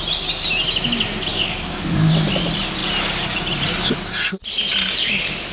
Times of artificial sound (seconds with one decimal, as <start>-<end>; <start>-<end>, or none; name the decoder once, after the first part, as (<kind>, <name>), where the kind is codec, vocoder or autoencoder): 1.3-2.1 (codec, DAC)